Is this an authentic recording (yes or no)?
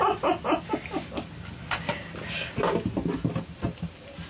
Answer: yes